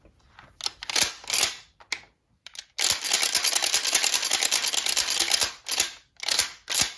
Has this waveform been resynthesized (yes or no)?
no